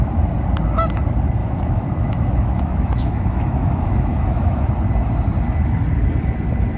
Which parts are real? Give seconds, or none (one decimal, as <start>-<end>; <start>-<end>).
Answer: 0.0-1.4; 4.6-6.8